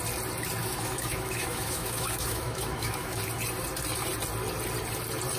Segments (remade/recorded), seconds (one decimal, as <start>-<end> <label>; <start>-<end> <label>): 0.0-0.6 recorded; 0.6-3.2 remade; 3.2-5.4 recorded